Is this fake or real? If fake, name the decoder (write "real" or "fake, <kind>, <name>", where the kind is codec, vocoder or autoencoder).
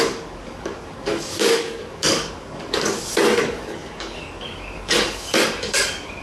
fake, codec, DAC